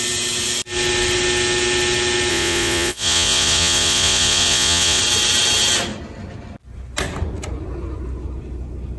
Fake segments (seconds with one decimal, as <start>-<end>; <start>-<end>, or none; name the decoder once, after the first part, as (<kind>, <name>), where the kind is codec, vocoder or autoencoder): 2.3-5.0 (vocoder, Vocos)